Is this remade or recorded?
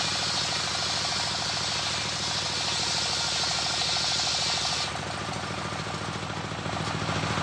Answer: recorded